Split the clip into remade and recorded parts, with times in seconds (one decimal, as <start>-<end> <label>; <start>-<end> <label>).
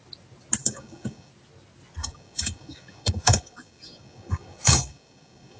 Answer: 0.0-0.6 recorded; 0.6-1.3 remade; 1.3-2.0 recorded; 2.0-5.6 remade